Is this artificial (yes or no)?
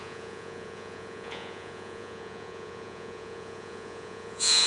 yes